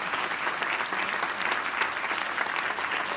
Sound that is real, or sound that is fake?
real